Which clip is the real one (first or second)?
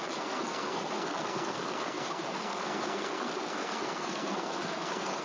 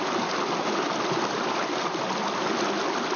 second